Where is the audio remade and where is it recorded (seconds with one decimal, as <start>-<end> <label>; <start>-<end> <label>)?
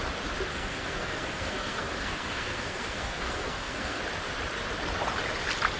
0.0-0.5 recorded; 0.5-4.0 remade; 4.0-5.8 recorded